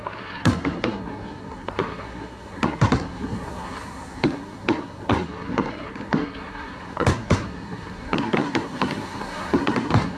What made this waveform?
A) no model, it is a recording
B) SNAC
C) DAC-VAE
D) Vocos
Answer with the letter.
B